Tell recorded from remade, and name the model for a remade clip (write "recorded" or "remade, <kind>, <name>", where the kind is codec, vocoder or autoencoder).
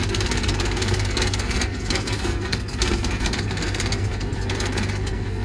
remade, codec, SNAC